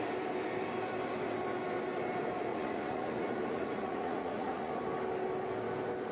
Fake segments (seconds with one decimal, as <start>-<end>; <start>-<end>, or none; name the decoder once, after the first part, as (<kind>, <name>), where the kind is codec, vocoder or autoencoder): 2.5-4.7 (vocoder, Vocos)